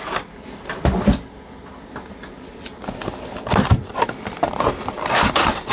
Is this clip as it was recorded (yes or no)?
no